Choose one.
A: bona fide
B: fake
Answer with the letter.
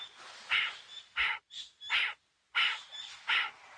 A